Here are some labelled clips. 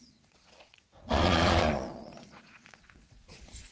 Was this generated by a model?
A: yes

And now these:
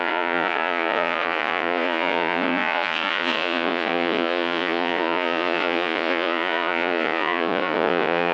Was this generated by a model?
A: yes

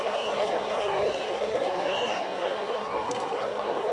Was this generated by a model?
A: yes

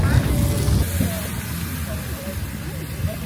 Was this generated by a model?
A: no